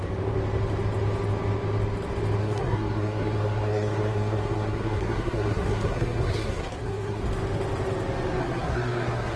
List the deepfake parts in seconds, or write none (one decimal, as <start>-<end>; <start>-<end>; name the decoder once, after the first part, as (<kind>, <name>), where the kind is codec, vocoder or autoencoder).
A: 2.4-7.2 (codec, SNAC); 8.4-9.4